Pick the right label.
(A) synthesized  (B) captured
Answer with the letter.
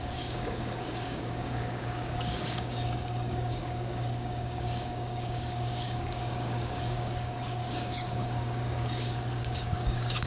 A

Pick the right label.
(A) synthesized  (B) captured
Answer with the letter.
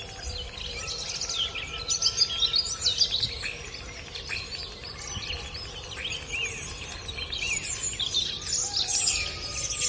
B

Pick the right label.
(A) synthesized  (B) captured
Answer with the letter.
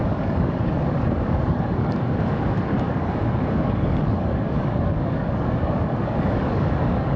A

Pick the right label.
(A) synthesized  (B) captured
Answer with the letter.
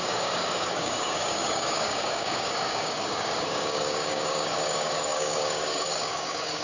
A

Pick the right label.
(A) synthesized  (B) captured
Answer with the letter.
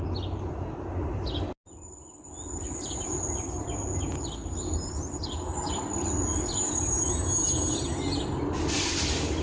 B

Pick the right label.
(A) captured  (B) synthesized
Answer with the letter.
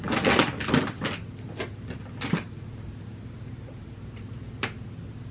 A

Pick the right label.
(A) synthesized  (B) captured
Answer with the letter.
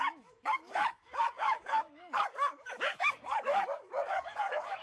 A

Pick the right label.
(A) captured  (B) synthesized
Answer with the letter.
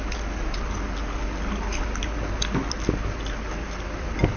A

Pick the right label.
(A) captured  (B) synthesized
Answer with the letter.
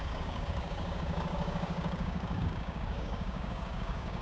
B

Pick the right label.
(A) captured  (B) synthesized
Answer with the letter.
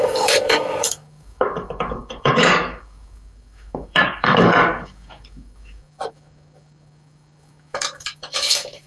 B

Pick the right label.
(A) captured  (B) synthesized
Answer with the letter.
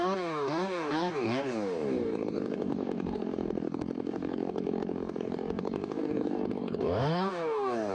B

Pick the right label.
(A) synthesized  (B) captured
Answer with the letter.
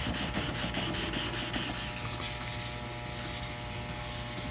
B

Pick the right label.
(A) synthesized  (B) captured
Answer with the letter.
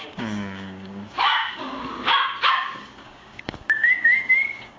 A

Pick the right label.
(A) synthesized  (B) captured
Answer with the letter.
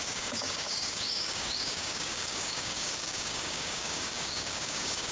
A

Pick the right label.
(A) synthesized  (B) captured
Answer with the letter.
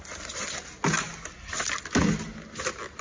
B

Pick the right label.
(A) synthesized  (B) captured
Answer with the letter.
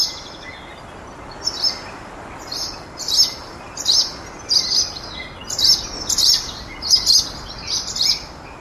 B